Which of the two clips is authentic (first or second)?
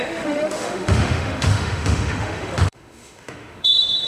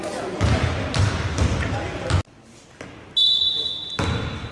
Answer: second